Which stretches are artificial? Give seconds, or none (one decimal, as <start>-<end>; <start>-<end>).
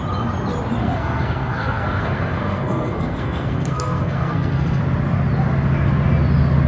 0.8-4.8